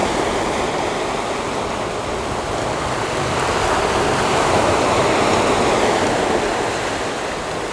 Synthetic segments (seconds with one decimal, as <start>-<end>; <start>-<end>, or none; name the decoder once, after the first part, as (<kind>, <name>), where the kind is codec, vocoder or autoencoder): 0.0-0.6 (vocoder, BigVGAN v2); 4.3-5.0